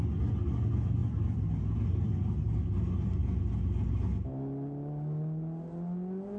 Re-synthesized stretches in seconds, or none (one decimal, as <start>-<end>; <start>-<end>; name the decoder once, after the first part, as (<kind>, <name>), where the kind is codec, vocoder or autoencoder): none